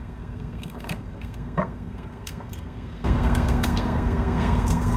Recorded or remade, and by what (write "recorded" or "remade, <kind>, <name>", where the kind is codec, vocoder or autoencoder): remade, codec, SNAC